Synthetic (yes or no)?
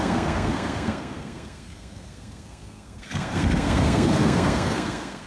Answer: yes